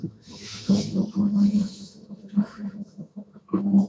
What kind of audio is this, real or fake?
fake